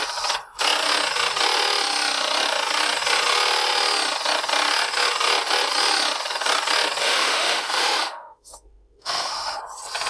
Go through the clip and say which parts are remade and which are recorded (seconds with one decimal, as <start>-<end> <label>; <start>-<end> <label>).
0.0-7.0 recorded; 7.0-9.6 remade; 9.6-10.1 recorded